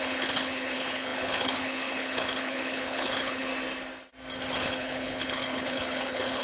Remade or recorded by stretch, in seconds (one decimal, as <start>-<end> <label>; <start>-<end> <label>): 0.0-3.5 remade; 3.5-4.6 recorded; 4.6-6.4 remade